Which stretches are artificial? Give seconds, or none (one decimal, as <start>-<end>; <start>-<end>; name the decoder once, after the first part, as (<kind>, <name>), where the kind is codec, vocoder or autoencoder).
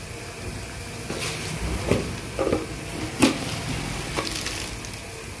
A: none